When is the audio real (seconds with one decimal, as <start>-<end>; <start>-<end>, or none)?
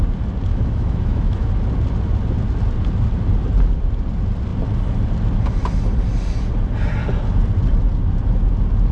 0.0-0.5; 1.5-8.9